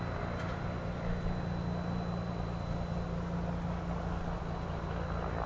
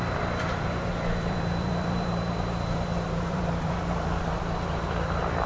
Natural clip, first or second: first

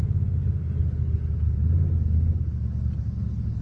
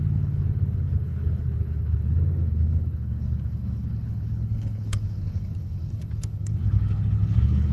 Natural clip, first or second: first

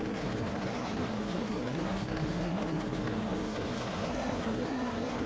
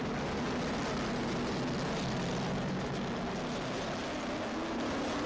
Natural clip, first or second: second